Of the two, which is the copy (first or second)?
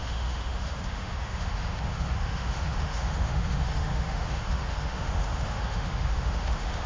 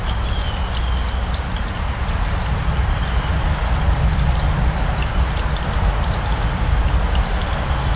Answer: first